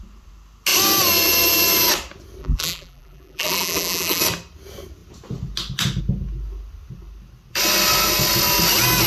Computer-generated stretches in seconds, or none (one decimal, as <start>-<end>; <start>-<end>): 2.4-4.2